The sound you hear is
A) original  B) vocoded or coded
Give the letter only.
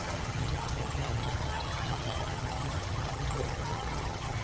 B